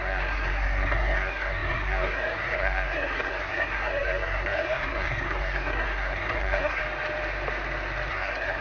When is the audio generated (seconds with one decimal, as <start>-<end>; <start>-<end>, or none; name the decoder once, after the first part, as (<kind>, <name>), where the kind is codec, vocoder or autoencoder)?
0.0-6.8 (codec, SNAC); 8.1-8.6